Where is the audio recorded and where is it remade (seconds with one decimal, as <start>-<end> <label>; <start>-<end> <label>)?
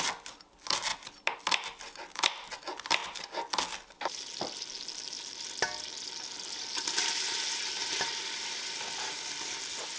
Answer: 0.0-10.0 recorded